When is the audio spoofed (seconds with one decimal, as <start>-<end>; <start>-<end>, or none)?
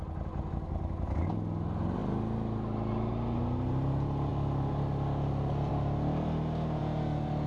none